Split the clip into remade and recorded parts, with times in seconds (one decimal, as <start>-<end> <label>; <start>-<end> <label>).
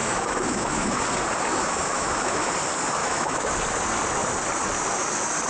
0.0-1.0 remade; 1.0-1.5 recorded; 1.5-2.5 remade; 2.5-3.0 recorded; 3.0-3.5 remade; 3.5-5.5 recorded